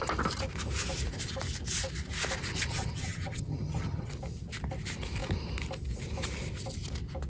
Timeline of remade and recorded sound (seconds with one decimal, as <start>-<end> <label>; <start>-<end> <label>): 0.0-2.7 recorded; 2.7-4.1 remade; 4.1-7.3 recorded